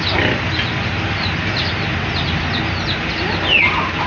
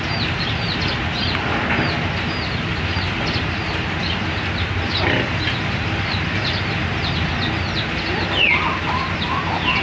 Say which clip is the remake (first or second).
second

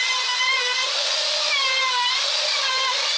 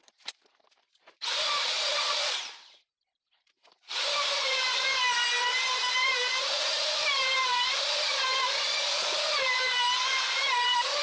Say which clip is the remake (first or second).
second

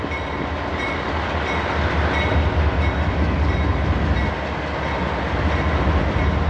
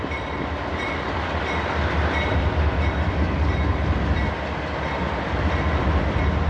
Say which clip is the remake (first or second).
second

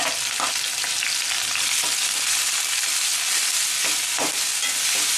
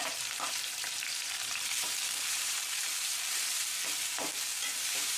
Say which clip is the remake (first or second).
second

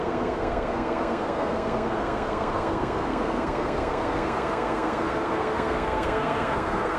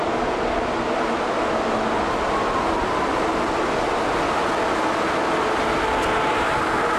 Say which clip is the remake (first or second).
first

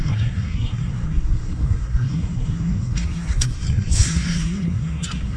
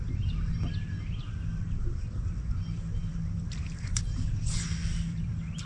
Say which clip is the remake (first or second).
first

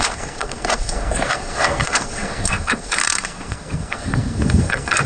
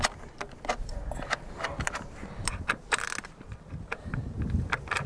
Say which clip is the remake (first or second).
first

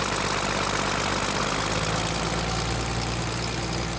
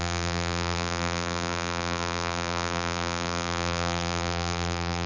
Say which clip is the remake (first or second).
second